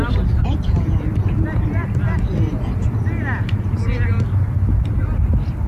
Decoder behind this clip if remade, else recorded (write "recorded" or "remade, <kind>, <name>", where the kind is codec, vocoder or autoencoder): recorded